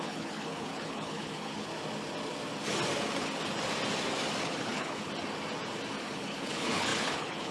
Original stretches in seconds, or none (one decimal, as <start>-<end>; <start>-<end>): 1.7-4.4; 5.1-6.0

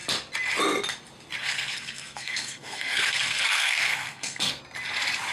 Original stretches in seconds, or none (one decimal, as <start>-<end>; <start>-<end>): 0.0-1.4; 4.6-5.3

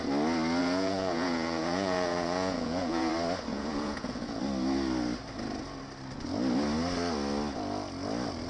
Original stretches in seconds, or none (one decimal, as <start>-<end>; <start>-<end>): 0.0-0.6; 3.1-3.5; 4.4-8.5

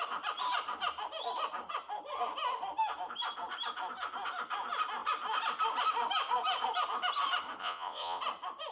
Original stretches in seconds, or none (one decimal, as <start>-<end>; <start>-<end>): 0.0-7.6; 8.2-8.7

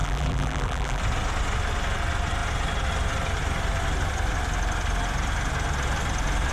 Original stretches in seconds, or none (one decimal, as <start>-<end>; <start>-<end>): 1.0-6.5

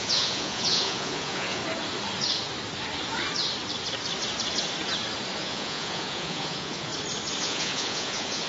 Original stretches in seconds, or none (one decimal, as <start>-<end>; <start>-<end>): 1.6-5.4; 6.9-7.4